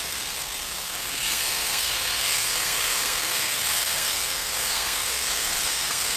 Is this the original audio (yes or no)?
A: no